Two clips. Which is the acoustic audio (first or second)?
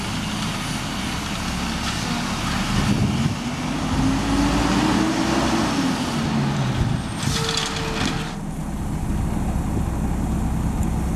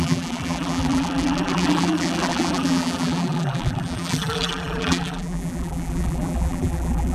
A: first